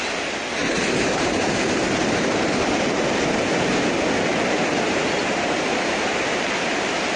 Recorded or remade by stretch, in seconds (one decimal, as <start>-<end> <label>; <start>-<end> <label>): 0.0-0.6 recorded; 0.6-1.8 remade; 1.8-4.3 recorded; 4.3-6.2 remade; 6.2-7.2 recorded